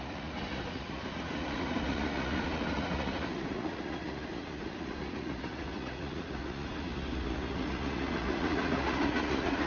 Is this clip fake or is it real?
fake